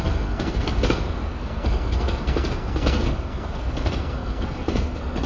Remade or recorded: remade